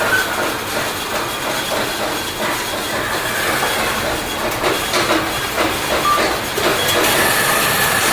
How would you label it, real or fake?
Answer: real